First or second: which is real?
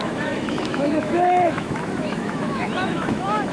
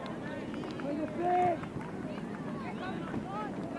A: second